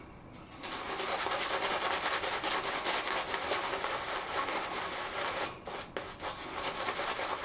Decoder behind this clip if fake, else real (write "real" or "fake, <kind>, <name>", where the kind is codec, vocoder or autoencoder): real